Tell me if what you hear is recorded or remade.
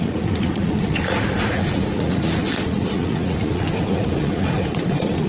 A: remade